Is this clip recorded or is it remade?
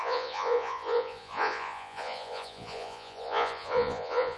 remade